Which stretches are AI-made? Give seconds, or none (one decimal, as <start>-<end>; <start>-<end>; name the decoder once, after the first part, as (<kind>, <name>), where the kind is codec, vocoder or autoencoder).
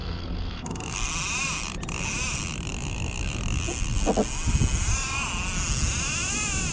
0.0-1.1 (codec, SNAC)